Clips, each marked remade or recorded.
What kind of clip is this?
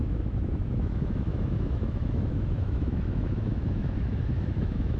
remade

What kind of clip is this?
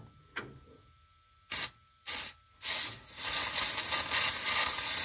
recorded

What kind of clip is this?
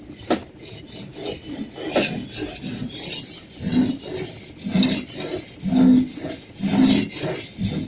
recorded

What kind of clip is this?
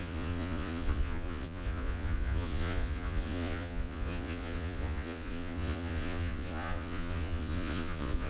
remade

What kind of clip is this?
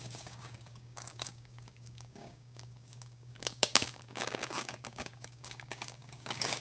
remade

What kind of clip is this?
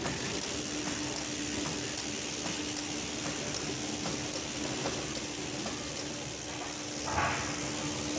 recorded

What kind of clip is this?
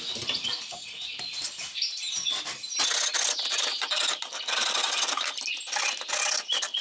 recorded